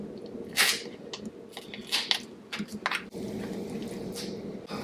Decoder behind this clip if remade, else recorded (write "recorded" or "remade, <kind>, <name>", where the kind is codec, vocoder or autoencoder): recorded